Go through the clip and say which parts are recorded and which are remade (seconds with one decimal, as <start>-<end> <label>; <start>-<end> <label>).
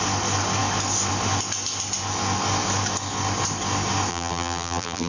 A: 0.0-4.1 recorded; 4.1-5.1 remade